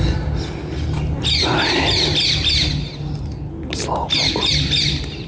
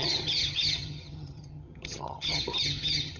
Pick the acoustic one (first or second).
first